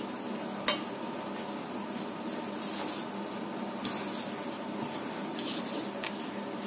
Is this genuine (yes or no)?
yes